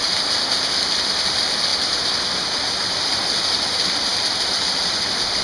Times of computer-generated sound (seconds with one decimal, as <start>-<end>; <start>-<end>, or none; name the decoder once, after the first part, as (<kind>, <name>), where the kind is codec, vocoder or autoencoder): none